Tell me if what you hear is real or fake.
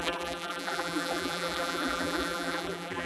fake